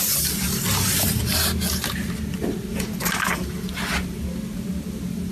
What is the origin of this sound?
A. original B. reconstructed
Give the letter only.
A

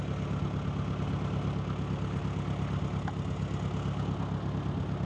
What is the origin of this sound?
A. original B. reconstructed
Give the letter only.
A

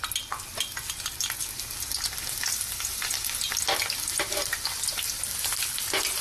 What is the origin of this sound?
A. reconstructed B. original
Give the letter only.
B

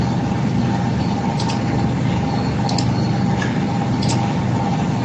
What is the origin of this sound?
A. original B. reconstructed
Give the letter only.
A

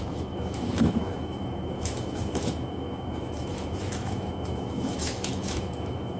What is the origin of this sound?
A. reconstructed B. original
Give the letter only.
A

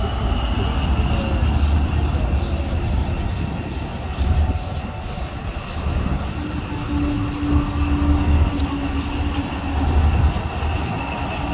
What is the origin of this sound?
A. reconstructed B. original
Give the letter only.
B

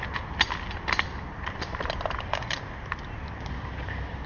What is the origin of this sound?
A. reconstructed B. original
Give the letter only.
B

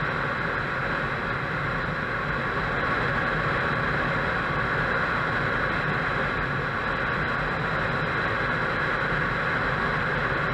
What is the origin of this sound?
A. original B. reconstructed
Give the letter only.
A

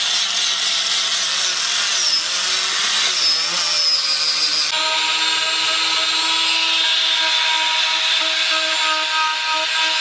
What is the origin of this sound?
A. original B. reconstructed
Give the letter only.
A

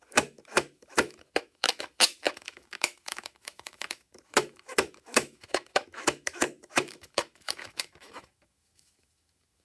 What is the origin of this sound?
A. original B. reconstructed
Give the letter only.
B